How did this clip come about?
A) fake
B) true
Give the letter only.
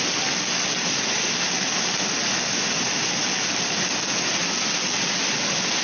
B